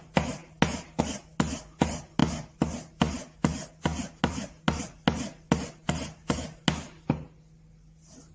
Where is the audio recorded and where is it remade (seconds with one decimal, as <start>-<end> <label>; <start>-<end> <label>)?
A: 0.0-8.3 recorded